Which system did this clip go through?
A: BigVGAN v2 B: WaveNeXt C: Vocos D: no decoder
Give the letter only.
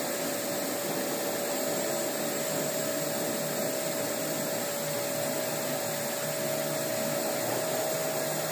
D